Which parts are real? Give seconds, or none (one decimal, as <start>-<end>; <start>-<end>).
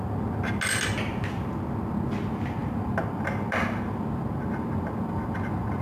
0.0-5.8